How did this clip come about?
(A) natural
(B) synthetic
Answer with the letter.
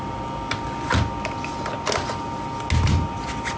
A